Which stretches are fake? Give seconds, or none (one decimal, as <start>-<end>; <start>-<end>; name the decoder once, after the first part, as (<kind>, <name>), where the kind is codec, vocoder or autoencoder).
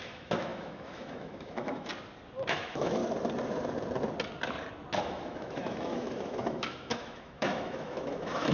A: 0.0-1.9 (autoencoder, DAC-VAE); 2.5-3.0; 5.0-8.5